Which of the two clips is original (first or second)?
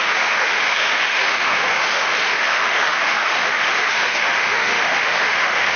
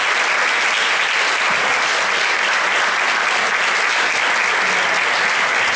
second